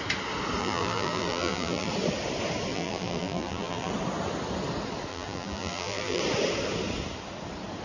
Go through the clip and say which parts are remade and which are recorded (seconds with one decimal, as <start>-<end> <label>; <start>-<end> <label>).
0.0-0.6 recorded; 0.6-1.9 remade; 1.9-2.7 recorded; 2.7-3.9 remade; 3.9-5.1 recorded; 5.1-6.2 remade; 6.2-7.8 recorded